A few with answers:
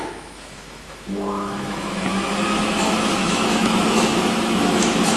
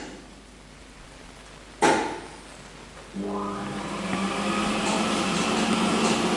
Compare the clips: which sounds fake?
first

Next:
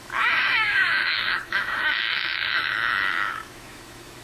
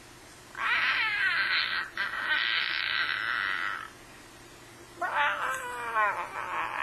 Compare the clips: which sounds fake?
first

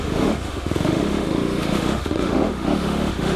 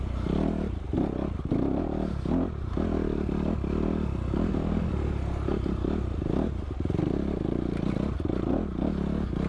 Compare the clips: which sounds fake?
first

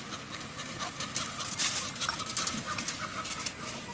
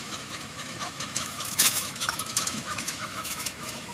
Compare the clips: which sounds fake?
second